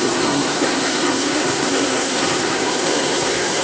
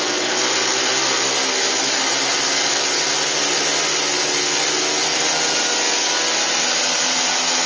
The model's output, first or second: first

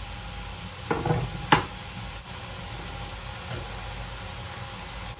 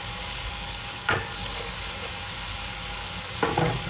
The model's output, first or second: second